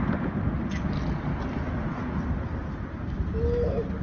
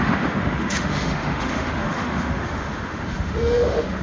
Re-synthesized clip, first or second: second